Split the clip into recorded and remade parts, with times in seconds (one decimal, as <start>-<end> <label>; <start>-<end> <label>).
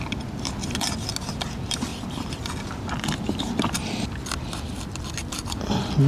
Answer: 0.0-6.1 recorded